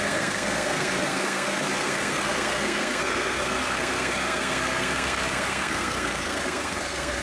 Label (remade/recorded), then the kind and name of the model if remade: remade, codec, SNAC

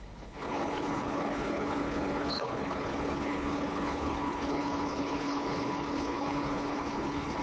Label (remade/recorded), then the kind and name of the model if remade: remade, codec, HILCodec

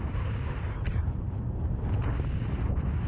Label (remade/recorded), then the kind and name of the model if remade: recorded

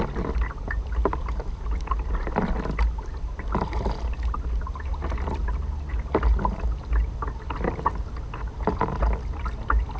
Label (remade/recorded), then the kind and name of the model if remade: recorded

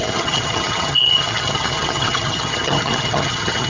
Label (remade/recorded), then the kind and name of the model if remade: remade, vocoder, HiFi-GAN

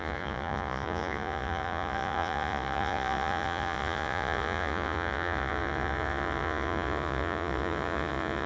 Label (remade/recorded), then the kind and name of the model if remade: remade, vocoder, Vocos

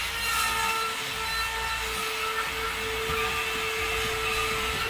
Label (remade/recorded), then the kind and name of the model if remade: recorded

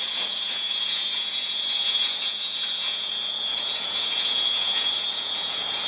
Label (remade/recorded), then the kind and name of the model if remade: remade, vocoder, Vocos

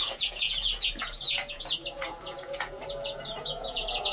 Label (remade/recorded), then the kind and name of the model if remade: remade, vocoder, Vocos